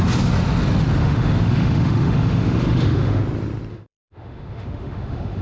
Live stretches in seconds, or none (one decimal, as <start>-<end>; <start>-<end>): 0.0-1.0; 3.2-3.7